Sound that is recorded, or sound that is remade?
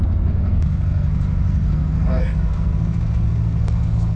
remade